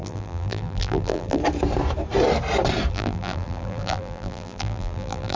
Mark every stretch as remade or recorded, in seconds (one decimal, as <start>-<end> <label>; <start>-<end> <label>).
0.0-1.4 remade; 1.4-2.9 recorded; 2.9-5.4 remade